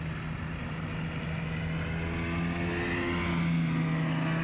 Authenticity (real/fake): real